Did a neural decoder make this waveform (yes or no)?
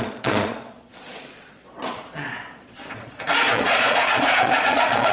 yes